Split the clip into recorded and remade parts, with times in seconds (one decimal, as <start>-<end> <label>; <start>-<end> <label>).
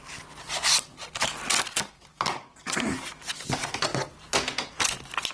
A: 0.0-2.1 recorded; 2.1-2.9 remade; 2.9-5.3 recorded